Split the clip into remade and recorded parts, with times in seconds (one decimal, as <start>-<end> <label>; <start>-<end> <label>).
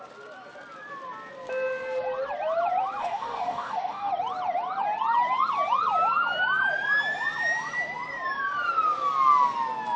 0.0-3.0 recorded; 3.0-4.1 remade; 4.1-10.0 recorded